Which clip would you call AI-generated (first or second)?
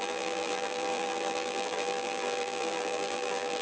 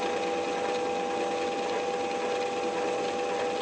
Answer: first